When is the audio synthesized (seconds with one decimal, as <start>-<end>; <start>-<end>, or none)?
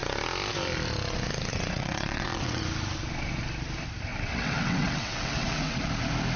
1.5-2.6; 4.1-5.9